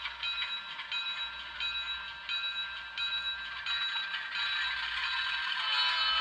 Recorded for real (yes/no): yes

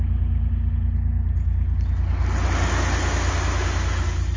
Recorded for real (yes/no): yes